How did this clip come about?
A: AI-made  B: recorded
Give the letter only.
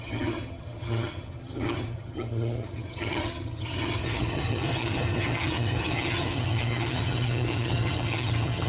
A